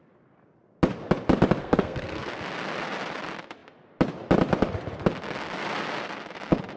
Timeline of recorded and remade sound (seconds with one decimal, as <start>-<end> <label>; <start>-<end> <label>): 0.0-1.6 recorded; 1.6-2.3 remade; 2.3-6.8 recorded